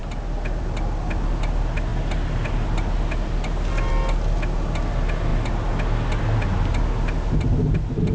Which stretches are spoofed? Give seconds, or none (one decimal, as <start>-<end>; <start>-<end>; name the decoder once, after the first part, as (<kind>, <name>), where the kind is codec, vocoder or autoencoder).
none